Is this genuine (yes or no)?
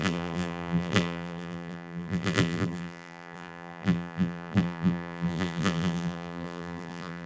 no